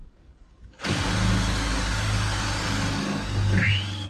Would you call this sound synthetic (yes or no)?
yes